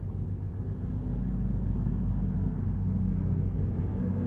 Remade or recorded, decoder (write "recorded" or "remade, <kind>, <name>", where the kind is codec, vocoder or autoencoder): remade, codec, SNAC